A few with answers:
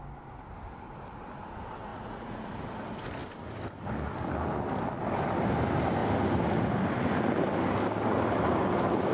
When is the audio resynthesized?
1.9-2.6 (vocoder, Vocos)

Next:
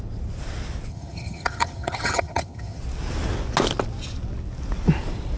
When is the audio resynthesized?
0.9-2.8 (vocoder, HiFi-GAN)